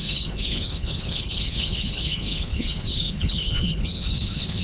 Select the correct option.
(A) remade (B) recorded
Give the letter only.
A